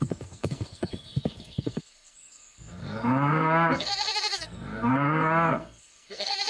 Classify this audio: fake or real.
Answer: fake